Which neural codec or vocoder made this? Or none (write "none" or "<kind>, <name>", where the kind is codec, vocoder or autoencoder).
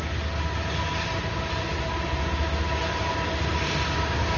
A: none